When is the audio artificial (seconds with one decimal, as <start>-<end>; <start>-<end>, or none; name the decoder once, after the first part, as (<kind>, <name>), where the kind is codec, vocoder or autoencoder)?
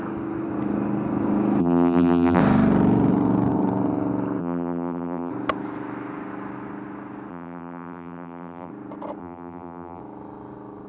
1.6-2.4 (vocoder, BigVGAN v2); 4.4-5.3; 7.3-8.7; 9.2-10.0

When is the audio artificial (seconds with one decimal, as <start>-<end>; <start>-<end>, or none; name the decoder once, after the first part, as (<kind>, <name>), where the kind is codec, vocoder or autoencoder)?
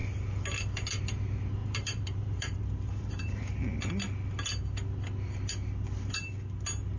1.6-3.9 (vocoder, BigVGAN v2)